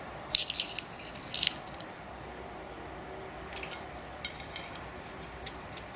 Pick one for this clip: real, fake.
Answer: real